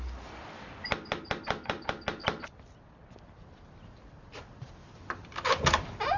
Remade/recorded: recorded